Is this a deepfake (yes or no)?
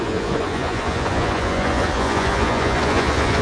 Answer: yes